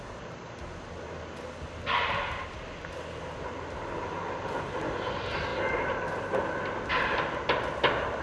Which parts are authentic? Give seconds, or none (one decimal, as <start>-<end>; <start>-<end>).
0.0-8.2